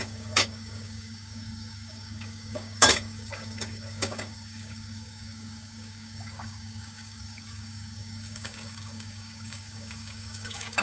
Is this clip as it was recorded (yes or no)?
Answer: no